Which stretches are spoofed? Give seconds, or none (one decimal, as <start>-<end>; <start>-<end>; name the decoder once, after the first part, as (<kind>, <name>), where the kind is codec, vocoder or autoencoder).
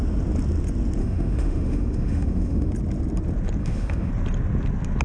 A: 1.0-2.7 (autoencoder, DAC-VAE); 3.6-4.1